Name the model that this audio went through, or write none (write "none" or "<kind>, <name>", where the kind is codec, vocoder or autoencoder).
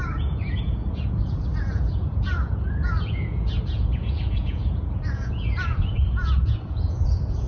vocoder, Vocos